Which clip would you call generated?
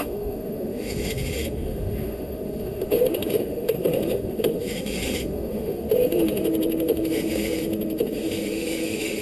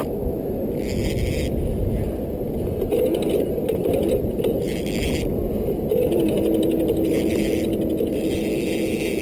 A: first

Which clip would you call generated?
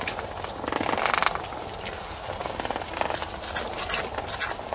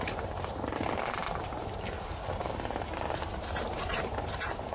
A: second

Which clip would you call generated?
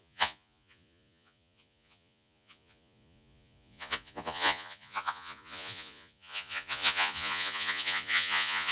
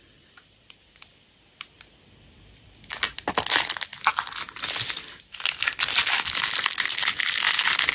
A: first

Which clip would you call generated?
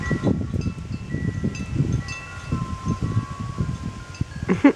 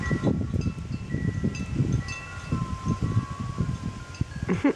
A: second